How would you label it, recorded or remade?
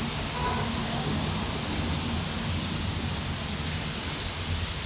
recorded